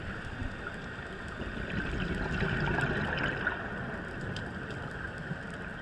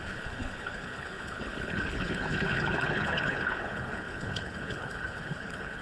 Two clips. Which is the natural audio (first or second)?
first